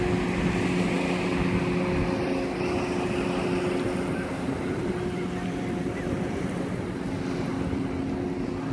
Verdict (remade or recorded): recorded